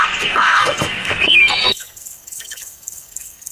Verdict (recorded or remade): remade